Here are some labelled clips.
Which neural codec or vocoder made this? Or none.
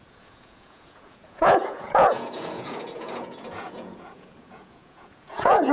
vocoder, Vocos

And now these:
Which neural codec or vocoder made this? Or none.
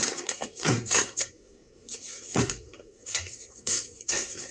codec, SNAC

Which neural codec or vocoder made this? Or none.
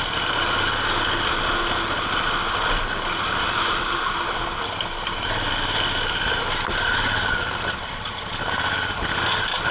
none